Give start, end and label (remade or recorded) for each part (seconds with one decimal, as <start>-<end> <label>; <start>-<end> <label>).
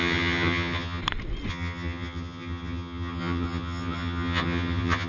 0.0-1.0 remade; 1.0-1.5 recorded; 1.5-5.1 remade